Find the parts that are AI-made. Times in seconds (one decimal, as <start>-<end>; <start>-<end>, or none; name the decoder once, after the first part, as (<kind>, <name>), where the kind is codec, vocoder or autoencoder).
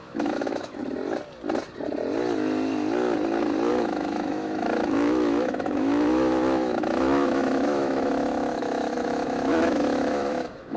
0.0-0.8 (autoencoder, DAC-VAE); 3.7-10.8